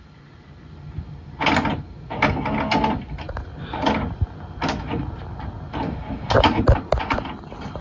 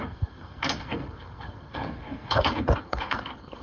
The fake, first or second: second